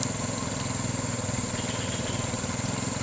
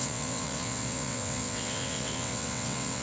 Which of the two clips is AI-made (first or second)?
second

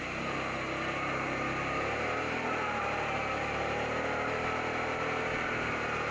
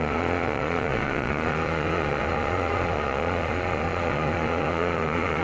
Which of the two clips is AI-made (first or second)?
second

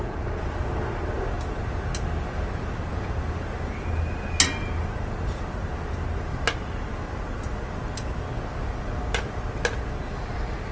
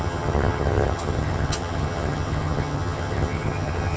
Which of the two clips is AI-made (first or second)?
second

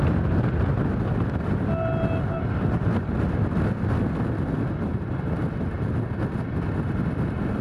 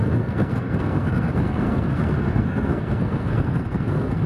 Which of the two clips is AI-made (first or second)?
second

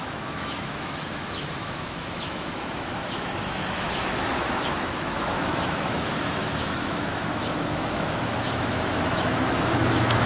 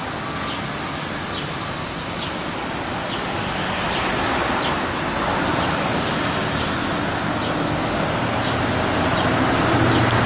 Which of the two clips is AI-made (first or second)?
first